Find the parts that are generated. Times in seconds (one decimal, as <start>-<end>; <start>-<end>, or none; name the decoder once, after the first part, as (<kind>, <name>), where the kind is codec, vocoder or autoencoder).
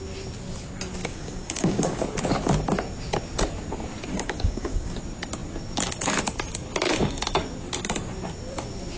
1.0-2.0 (codec, DAC); 4.1-5.0